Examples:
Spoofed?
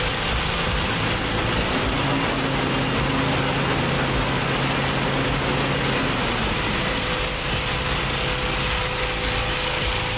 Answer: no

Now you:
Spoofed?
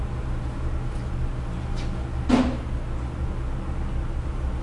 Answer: no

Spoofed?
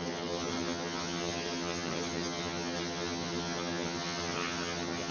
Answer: yes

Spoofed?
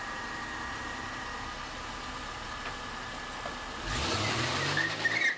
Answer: no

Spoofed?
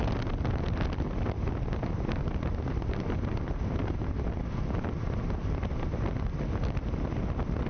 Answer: no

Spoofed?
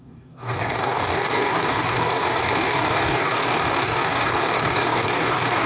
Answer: yes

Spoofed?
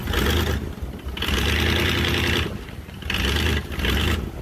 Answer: no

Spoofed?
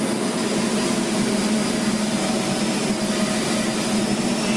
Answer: no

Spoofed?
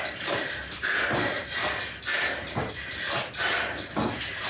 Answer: no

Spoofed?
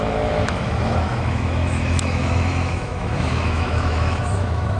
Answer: yes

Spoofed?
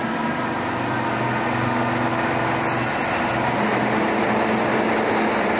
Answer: no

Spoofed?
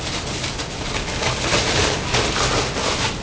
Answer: no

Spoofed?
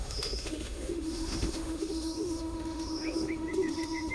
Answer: yes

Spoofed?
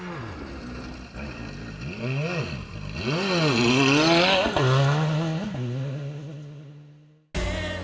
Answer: no